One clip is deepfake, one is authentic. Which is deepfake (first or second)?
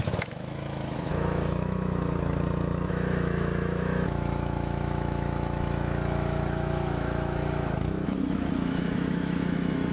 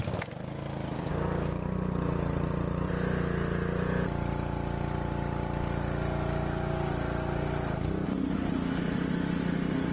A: first